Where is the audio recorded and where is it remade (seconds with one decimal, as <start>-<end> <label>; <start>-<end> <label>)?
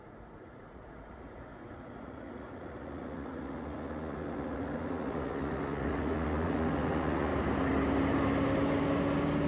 0.0-7.3 remade; 7.3-9.5 recorded